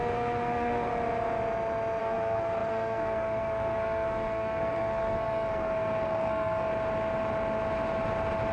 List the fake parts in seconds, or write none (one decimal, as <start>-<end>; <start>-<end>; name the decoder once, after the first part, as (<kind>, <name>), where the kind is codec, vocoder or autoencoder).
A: 0.0-0.9 (codec, SNAC); 2.0-6.7